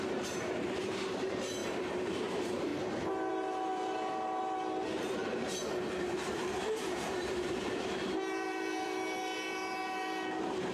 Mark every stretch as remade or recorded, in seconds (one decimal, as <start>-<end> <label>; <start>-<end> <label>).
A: 0.0-2.7 remade; 2.7-3.3 recorded; 3.3-10.7 remade